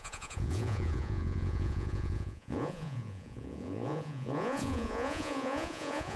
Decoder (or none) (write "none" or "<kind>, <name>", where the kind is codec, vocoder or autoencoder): vocoder, Vocos